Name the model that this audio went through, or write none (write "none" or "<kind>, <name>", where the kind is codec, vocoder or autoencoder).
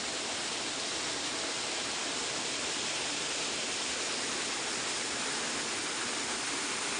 none